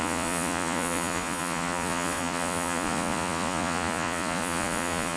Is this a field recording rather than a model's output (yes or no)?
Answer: no